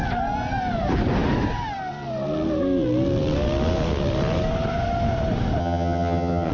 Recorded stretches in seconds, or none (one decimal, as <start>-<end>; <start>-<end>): 0.0-5.6